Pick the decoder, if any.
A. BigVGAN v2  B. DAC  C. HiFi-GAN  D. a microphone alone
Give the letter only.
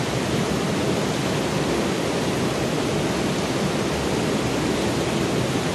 D